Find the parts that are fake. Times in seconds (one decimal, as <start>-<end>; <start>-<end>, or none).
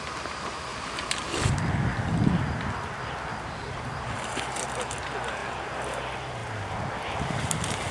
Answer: 0.7-1.7; 3.3-4.4; 6.4-7.9